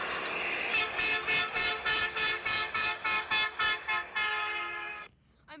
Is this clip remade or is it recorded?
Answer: recorded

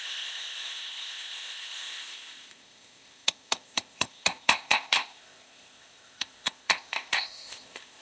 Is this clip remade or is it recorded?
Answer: remade